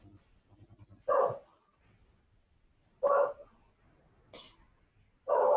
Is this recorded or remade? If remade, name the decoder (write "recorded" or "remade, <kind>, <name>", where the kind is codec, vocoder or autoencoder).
recorded